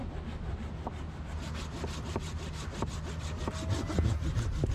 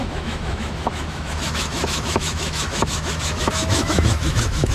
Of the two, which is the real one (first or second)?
first